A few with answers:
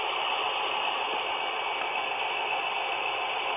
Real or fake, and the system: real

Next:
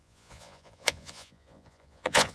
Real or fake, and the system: fake, vocoder, Vocos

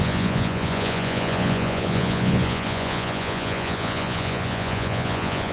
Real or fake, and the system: fake, vocoder, Vocos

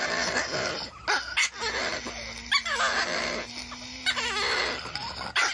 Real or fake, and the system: real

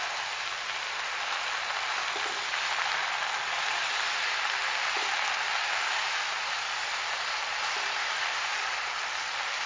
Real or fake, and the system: real